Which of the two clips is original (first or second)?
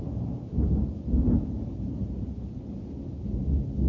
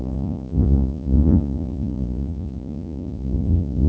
first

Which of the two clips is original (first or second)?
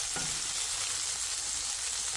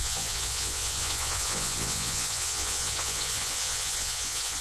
first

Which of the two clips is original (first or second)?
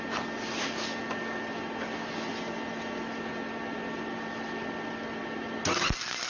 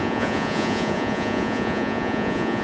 first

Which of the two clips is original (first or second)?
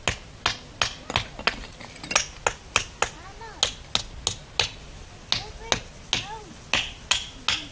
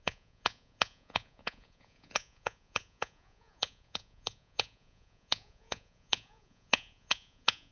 first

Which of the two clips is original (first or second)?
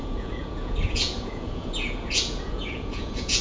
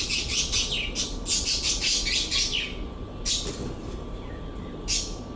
second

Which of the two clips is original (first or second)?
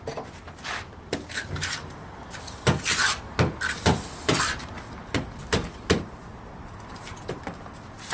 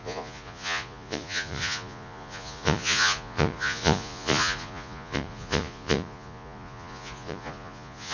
first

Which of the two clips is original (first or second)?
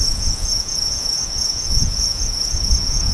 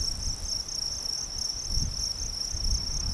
second